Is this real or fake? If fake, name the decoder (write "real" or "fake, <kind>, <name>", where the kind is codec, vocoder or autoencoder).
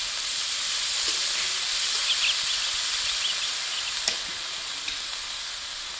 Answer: real